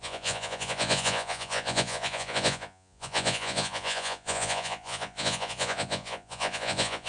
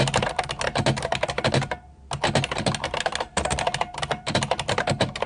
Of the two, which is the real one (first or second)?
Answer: second